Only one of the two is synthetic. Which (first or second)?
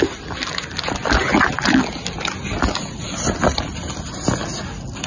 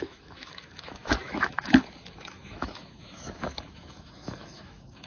second